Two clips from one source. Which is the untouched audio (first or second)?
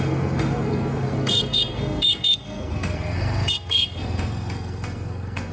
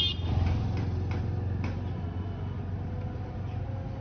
second